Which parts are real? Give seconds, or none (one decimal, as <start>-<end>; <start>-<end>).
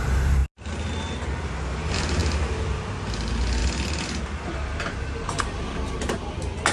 0.0-6.7